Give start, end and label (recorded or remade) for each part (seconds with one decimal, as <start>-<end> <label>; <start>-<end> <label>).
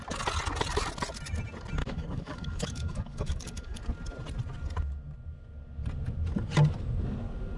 0.0-1.8 recorded; 1.8-3.8 remade; 3.8-7.6 recorded